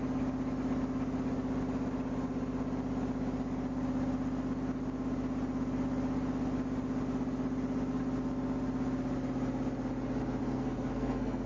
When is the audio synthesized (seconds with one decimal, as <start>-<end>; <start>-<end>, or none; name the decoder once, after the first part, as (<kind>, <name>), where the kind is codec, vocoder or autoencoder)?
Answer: 10.4-11.5 (codec, SNAC)

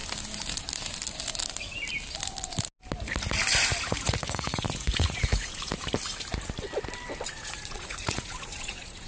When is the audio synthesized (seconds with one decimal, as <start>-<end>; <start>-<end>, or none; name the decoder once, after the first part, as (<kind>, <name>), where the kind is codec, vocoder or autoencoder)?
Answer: 3.8-5.7 (vocoder, Vocos); 7.3-9.1

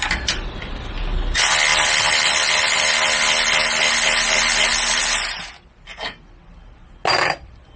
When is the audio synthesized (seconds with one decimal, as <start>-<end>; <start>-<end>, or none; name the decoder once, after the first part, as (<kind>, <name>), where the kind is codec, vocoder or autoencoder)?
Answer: 1.7-2.5 (vocoder, BigVGAN v2); 4.7-5.5

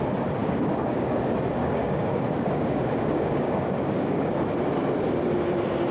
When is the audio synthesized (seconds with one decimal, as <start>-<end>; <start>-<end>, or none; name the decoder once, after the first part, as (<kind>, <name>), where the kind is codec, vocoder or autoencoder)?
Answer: 0.4-1.2 (codec, DAC); 1.6-4.3

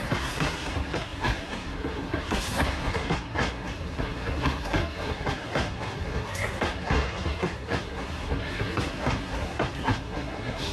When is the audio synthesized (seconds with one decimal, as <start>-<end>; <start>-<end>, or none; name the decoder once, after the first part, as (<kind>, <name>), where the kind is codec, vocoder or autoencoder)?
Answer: 0.0-10.7 (codec, SNAC)

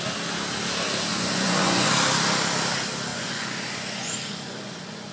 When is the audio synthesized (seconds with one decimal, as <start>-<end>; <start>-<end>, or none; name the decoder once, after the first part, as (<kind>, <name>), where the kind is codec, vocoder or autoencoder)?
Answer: 1.1-1.9 (vocoder, Vocos); 3.1-5.1